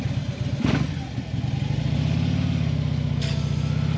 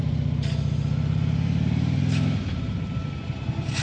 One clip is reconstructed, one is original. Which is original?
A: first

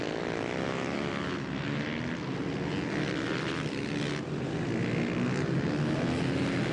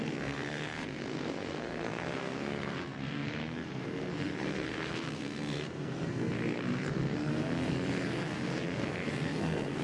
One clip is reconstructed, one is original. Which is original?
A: first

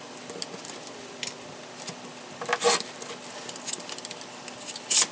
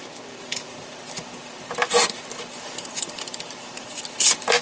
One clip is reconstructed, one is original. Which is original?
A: first